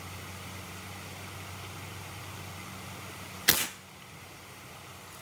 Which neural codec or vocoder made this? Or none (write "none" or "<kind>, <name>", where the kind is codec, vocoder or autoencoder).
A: none